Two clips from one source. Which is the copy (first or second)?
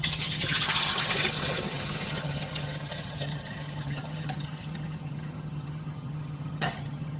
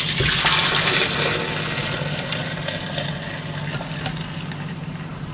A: first